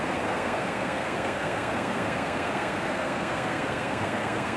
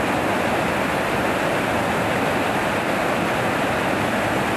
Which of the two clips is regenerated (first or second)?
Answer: first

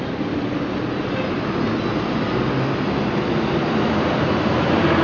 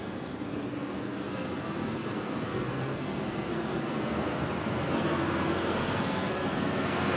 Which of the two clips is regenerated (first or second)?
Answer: second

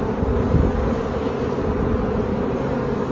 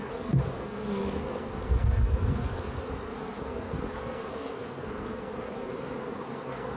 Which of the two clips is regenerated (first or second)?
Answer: second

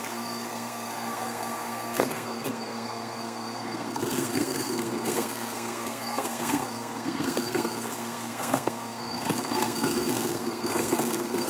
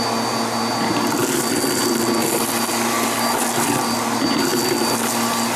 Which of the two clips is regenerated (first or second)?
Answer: first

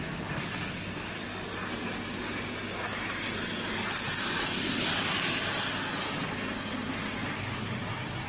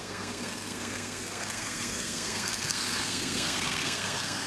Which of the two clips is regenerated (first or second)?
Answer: second